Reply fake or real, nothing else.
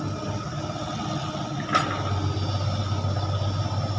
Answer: real